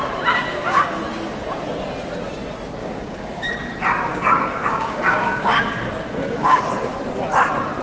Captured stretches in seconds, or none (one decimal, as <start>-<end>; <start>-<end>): 0.0-0.5; 1.0-2.8; 3.5-4.1; 6.6-7.8